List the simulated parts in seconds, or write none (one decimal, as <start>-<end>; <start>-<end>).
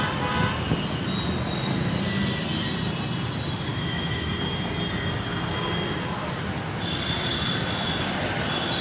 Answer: 3.7-4.3